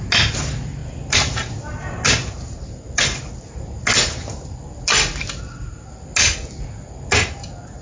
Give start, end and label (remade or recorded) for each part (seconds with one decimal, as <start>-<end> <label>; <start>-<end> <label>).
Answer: 0.0-7.8 recorded